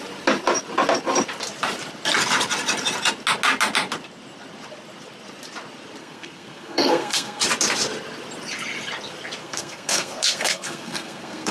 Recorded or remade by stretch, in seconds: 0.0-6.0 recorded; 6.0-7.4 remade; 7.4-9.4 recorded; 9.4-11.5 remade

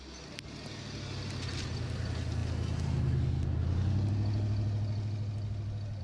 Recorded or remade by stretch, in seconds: 0.0-6.0 recorded

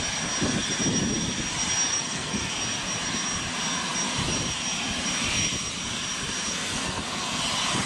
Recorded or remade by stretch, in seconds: 0.0-1.9 recorded; 1.9-2.5 remade; 2.5-6.5 recorded; 6.5-7.4 remade; 7.4-7.9 recorded

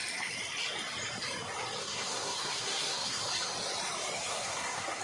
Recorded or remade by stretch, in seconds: 0.0-1.8 recorded; 1.8-3.2 remade; 3.2-4.3 recorded; 4.3-5.0 remade

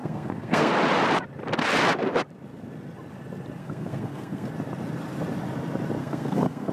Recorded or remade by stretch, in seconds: 0.0-0.7 remade; 0.7-3.6 recorded; 3.6-4.5 remade; 4.5-6.0 recorded; 6.0-6.7 remade

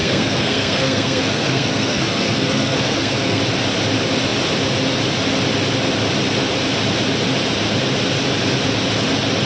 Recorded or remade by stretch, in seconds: 0.0-3.4 remade; 3.4-9.5 recorded